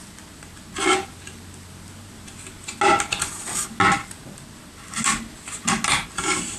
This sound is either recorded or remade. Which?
recorded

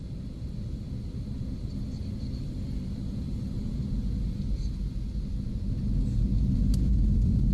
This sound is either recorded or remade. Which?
recorded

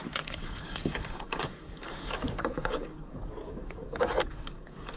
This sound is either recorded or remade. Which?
remade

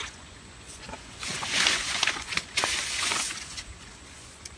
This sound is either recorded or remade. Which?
remade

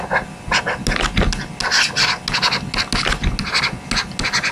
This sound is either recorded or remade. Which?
recorded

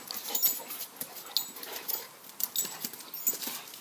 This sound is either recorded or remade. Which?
recorded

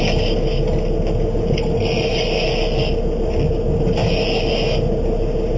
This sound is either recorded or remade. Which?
recorded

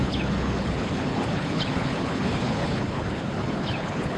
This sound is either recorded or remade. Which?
remade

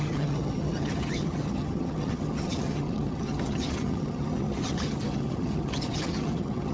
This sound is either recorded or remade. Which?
remade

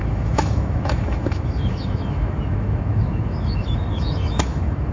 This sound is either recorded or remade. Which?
remade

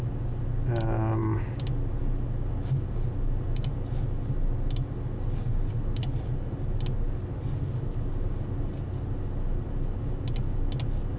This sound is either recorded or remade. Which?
recorded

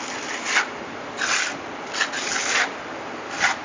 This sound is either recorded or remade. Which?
recorded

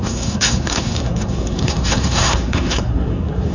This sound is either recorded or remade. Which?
remade